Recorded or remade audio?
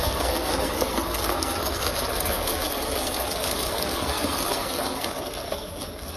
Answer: remade